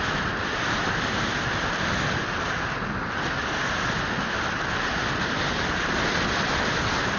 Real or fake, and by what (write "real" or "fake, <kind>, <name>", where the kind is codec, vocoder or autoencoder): real